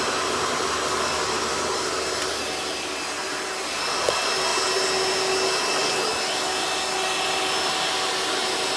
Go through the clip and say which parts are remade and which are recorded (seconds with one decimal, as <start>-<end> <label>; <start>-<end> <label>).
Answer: 0.0-8.8 recorded